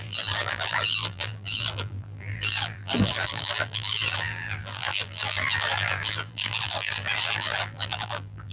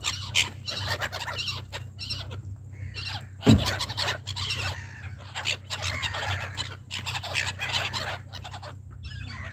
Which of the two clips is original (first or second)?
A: second